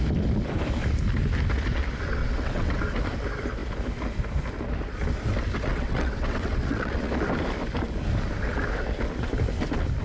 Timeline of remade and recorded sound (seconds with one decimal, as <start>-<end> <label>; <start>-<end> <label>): 0.0-2.2 recorded; 2.2-2.8 remade; 2.8-5.7 recorded; 5.7-7.1 remade; 7.1-10.0 recorded